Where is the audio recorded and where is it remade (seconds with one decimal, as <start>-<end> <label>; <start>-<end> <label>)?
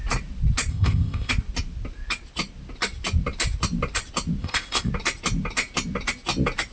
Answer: 0.0-0.7 recorded; 0.7-1.3 remade; 1.3-4.4 recorded; 4.4-4.9 remade; 4.9-6.7 recorded